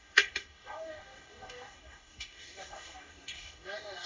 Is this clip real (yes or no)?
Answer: no